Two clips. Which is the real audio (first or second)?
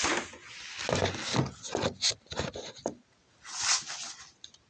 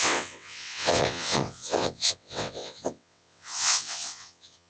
first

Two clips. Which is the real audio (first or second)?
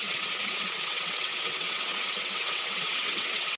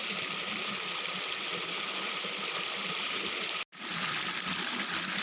second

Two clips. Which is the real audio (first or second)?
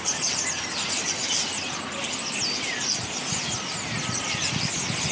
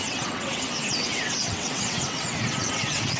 first